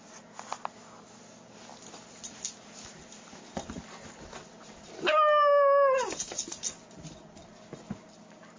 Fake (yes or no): no